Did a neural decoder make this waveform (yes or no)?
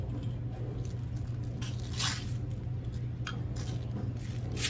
no